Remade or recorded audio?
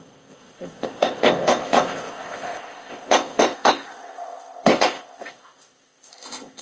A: remade